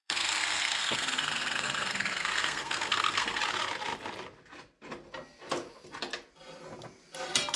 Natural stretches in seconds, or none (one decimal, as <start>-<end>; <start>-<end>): 3.4-7.6